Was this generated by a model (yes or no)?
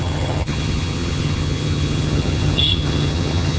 yes